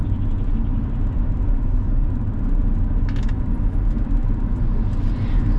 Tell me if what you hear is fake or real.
real